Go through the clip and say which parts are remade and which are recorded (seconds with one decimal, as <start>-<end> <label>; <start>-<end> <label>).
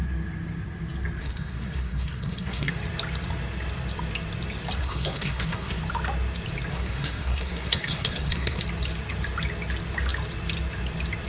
0.0-1.2 recorded; 1.2-2.7 remade; 2.7-4.8 recorded; 4.8-5.8 remade; 5.8-6.7 recorded; 6.7-8.6 remade; 8.6-11.3 recorded